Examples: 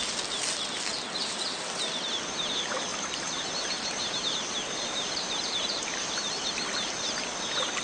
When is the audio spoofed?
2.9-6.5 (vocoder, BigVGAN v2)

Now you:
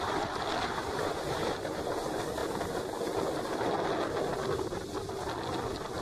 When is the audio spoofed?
0.8-1.9 (vocoder, BigVGAN v2)

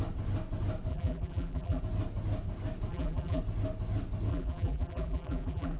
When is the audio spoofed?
0.9-1.8 (vocoder, BigVGAN v2); 2.9-3.4; 4.3-5.8